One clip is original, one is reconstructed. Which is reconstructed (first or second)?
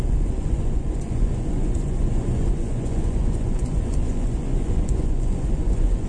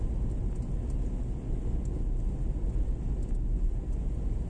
first